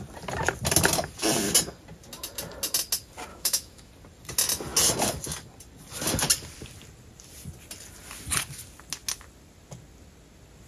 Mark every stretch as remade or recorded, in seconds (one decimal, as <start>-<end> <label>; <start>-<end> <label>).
0.0-3.3 recorded; 3.3-3.9 remade; 3.9-10.7 recorded

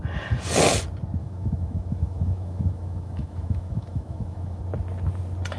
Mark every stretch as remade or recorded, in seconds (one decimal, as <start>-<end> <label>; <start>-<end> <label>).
0.0-1.2 recorded; 1.2-4.6 remade; 4.6-5.6 recorded

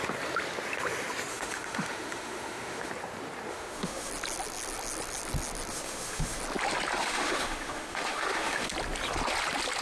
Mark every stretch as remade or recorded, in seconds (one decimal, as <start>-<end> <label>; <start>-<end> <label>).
0.0-1.3 recorded; 1.3-2.9 remade; 2.9-3.5 recorded; 3.5-4.1 remade; 4.1-5.7 recorded; 5.7-6.4 remade; 6.4-7.0 recorded; 7.0-8.7 remade; 8.7-9.8 recorded

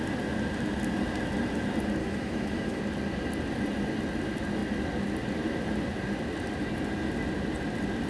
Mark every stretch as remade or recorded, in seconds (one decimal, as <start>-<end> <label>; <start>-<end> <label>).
0.0-2.0 recorded; 2.0-2.8 remade; 2.8-8.1 recorded

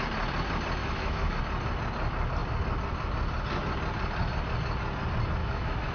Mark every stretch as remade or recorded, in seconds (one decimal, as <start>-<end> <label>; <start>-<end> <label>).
0.0-0.8 recorded; 0.8-1.4 remade; 1.4-5.4 recorded; 5.4-5.9 remade

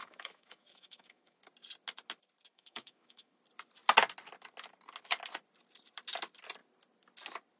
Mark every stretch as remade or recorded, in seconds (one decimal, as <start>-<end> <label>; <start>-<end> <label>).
0.0-1.4 remade; 1.4-2.5 recorded; 2.5-3.4 remade; 3.4-7.6 recorded